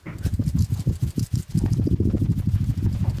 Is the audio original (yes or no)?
yes